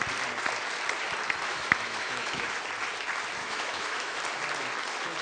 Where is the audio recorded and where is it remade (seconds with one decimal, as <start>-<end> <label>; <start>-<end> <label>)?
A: 0.0-1.5 recorded; 1.5-2.5 remade; 2.5-3.4 recorded; 3.4-4.2 remade; 4.2-5.2 recorded